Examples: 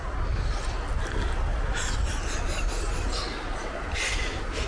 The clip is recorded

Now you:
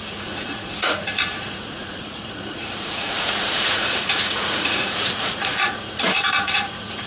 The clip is remade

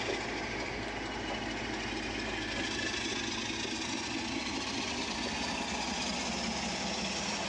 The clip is recorded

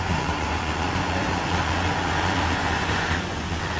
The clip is remade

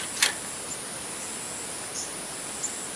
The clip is recorded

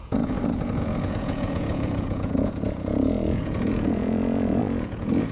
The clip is remade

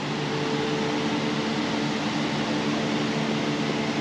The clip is recorded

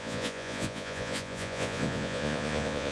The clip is remade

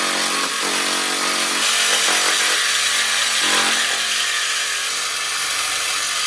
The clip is recorded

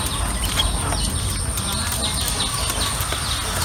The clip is recorded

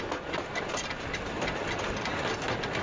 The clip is recorded